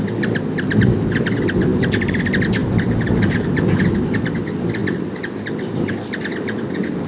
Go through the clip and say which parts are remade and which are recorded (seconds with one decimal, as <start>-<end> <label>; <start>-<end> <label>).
0.0-1.7 recorded; 1.7-2.2 remade; 2.2-2.6 recorded; 2.6-3.5 remade; 3.5-7.1 recorded

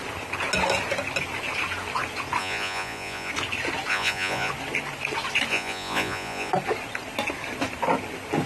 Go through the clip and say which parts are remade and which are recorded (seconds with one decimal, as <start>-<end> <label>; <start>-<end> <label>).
0.0-2.4 recorded; 2.4-3.3 remade; 3.3-3.9 recorded; 3.9-4.5 remade; 4.5-5.5 recorded; 5.5-6.5 remade; 6.5-8.5 recorded

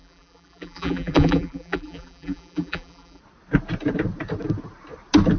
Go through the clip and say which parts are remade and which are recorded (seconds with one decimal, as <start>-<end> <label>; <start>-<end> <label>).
0.0-3.2 remade; 3.2-5.4 recorded

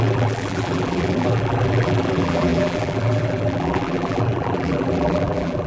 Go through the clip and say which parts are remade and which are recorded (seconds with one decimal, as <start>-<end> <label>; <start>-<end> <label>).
0.0-5.7 remade

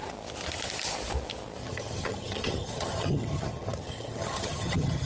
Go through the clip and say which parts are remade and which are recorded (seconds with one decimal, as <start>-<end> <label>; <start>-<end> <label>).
0.0-1.6 recorded; 1.6-5.1 remade